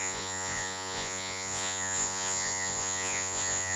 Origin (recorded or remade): remade